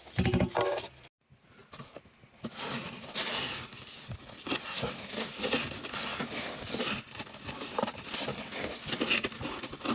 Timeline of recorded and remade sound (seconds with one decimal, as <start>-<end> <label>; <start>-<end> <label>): 0.0-9.9 recorded